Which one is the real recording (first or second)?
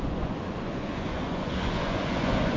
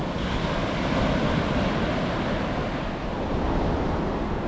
second